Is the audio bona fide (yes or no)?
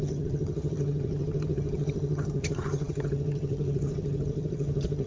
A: no